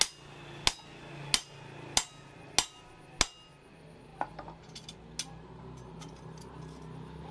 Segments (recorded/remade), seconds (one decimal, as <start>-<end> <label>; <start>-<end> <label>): 0.0-7.3 recorded